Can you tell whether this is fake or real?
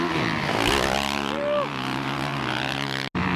real